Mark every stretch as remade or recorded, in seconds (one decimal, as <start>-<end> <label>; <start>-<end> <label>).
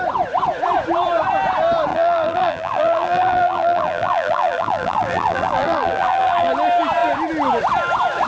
0.0-1.9 recorded; 1.9-6.5 remade; 6.5-8.3 recorded